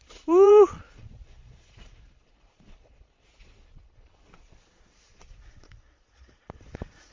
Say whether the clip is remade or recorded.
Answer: remade